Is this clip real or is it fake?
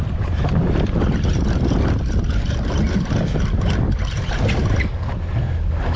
real